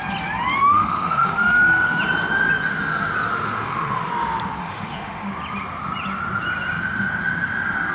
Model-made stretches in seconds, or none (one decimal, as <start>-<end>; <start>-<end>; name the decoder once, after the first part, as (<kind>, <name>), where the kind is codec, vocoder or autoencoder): 0.6-2.0 (autoencoder, DAC-VAE); 3.3-4.1; 4.6-5.3